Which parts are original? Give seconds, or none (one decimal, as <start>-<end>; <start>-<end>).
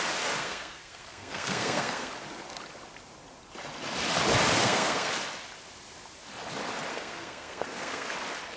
0.0-0.4; 2.1-4.6; 5.1-6.9; 8.1-8.6